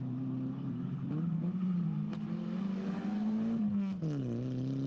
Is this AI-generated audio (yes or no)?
no